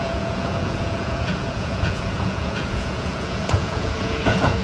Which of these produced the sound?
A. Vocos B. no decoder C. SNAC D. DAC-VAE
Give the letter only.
A